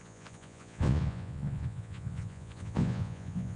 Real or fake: fake